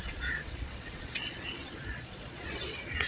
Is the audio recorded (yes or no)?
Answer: no